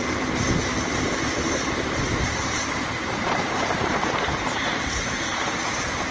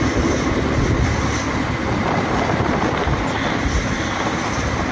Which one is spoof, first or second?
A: first